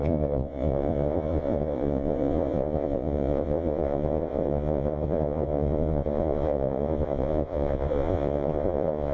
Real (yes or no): no